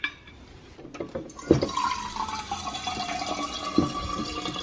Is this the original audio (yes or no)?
yes